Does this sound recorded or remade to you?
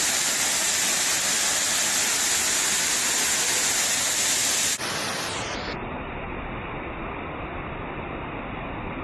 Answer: recorded